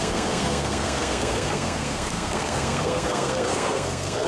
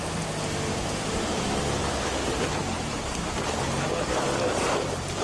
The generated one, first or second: first